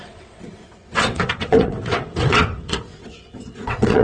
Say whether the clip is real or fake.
fake